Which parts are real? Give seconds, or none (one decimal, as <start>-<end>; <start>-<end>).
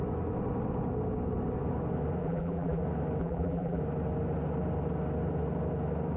0.0-2.2; 2.8-3.2; 3.8-6.2